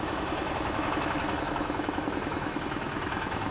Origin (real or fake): fake